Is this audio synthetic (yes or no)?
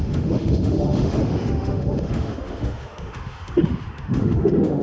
yes